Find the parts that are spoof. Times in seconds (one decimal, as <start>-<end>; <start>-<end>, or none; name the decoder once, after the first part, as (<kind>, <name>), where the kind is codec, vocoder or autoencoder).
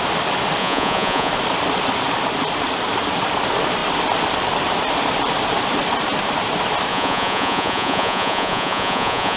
0.6-1.3 (vocoder, Vocos); 6.9-9.4